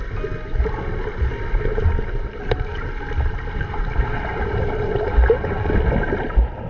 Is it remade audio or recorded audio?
recorded